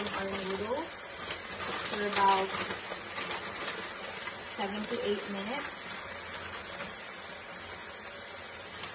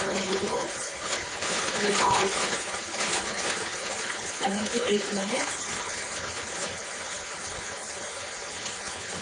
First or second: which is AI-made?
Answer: second